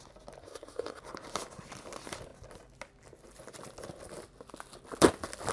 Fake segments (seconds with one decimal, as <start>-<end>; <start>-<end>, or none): 0.4-1.0